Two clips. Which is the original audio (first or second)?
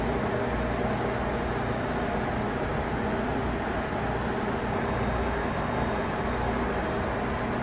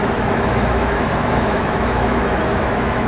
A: first